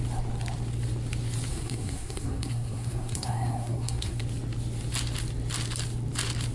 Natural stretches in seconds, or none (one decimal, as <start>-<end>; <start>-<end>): 0.0-1.5; 4.2-6.5